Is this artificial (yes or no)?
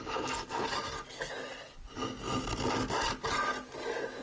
no